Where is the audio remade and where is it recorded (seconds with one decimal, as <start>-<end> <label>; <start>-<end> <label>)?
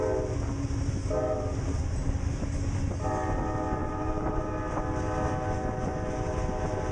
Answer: 0.0-3.8 recorded; 3.8-4.4 remade; 4.4-6.9 recorded